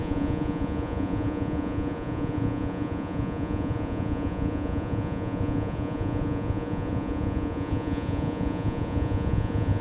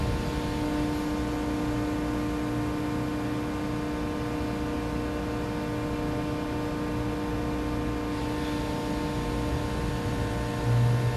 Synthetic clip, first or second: first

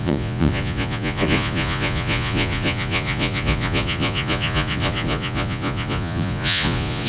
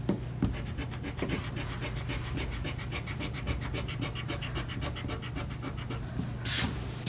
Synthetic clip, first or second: first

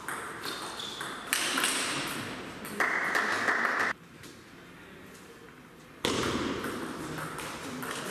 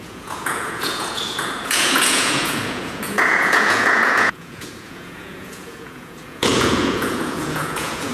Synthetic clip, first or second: second